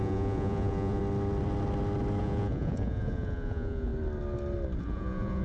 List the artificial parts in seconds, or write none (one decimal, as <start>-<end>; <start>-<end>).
0.0-1.0; 2.2-3.9; 4.8-5.4